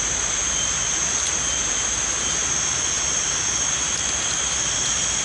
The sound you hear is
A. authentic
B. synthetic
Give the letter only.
A